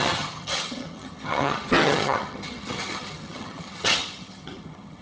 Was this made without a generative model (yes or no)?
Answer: no